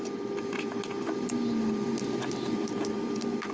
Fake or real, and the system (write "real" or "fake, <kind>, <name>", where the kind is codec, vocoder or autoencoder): real